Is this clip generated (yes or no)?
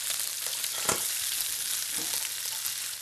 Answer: no